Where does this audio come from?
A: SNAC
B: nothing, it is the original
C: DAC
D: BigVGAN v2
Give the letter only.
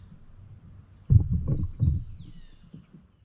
B